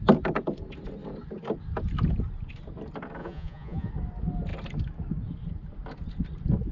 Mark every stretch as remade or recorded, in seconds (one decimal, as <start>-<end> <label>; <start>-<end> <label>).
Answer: 0.0-3.2 recorded; 3.2-3.9 remade; 3.9-6.7 recorded